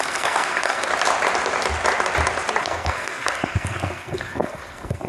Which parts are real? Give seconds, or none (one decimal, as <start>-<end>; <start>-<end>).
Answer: 0.9-2.6